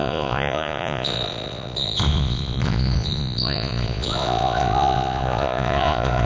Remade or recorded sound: remade